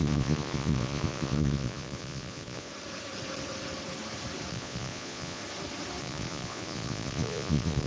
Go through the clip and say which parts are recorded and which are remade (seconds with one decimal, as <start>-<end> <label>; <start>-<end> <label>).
0.0-2.7 remade; 2.7-4.5 recorded; 4.5-5.4 remade; 5.4-6.0 recorded; 6.0-7.9 remade